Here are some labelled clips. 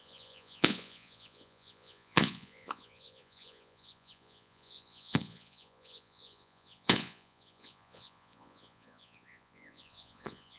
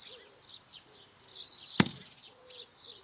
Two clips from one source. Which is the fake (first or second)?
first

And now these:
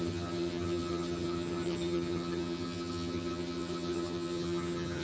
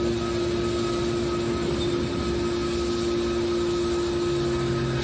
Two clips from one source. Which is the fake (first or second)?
first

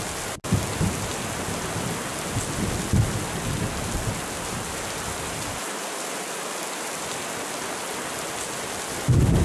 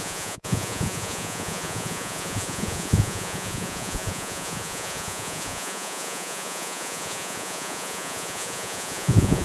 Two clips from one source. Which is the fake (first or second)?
second